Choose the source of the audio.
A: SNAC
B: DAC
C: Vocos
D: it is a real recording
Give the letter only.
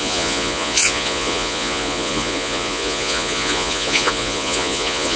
C